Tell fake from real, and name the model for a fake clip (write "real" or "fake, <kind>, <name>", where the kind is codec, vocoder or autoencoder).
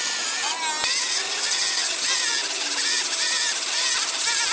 real